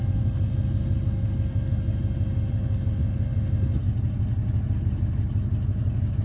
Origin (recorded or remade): recorded